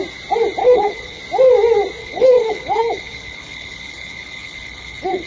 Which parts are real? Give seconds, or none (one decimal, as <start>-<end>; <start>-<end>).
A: 0.0-0.6; 1.2-2.0